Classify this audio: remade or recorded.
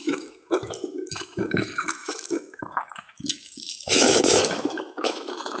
remade